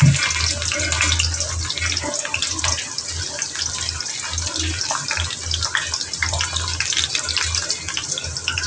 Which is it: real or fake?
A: real